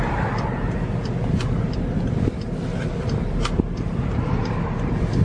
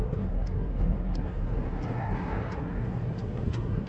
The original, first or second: first